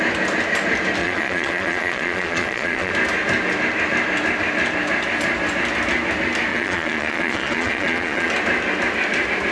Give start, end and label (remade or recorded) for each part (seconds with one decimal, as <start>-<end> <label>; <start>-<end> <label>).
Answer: 0.0-1.0 recorded; 1.0-2.9 remade; 2.9-6.5 recorded; 6.5-8.3 remade; 8.3-9.5 recorded